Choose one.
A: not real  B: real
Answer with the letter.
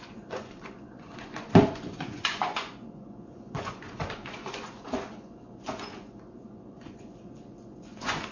A